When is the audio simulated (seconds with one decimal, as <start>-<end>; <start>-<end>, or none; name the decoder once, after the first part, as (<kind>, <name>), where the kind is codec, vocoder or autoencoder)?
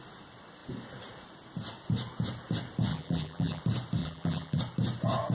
2.9-3.6 (vocoder, BigVGAN v2); 4.0-4.6